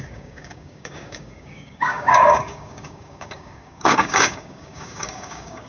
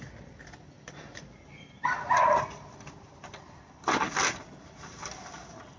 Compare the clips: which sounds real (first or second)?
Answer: second